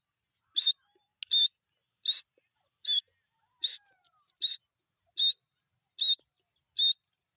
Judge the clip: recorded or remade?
recorded